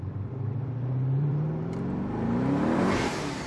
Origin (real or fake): fake